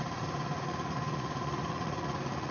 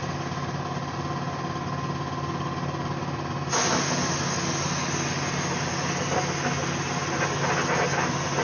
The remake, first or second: first